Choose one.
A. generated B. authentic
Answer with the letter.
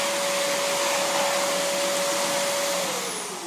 B